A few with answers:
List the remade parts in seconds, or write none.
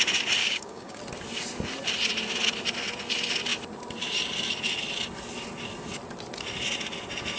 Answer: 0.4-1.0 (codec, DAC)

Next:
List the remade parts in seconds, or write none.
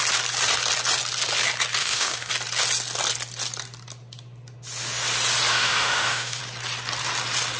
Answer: 1.8-2.3 (autoencoder, DAC-VAE); 5.5-6.4